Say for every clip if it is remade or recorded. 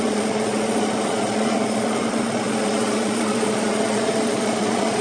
remade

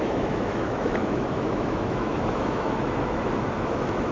remade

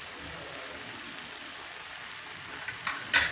recorded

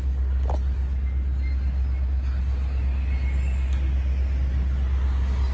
recorded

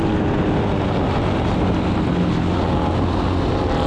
recorded